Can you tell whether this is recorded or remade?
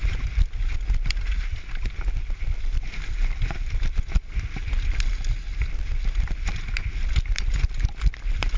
recorded